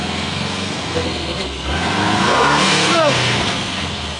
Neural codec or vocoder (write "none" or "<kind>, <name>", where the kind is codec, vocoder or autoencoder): codec, SNAC